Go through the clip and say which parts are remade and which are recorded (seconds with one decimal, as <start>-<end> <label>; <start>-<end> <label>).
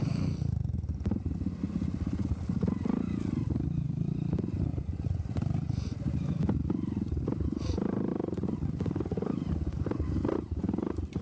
0.0-4.7 recorded; 4.7-6.4 remade; 6.4-8.1 recorded; 8.1-10.6 remade; 10.6-11.2 recorded